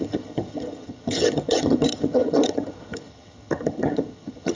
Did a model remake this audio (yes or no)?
yes